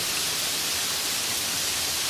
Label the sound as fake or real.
real